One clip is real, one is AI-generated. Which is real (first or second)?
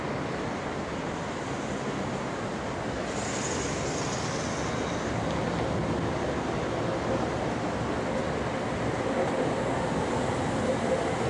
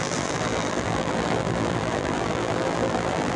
first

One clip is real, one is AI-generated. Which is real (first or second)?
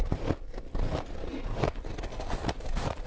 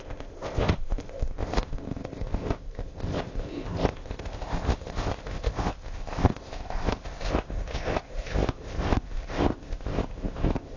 first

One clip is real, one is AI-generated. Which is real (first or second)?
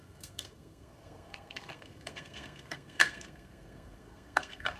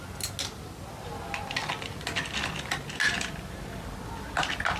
second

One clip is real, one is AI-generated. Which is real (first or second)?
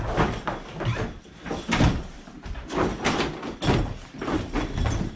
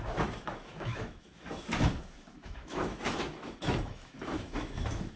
first